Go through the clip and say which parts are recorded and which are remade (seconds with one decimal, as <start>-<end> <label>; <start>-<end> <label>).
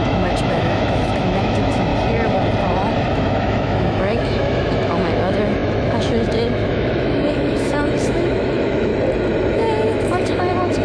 0.0-1.9 remade; 1.9-3.1 recorded; 3.1-8.9 remade; 8.9-9.5 recorded; 9.5-10.8 remade